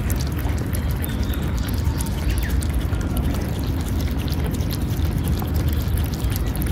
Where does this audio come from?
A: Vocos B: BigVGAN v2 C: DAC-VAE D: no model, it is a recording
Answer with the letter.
D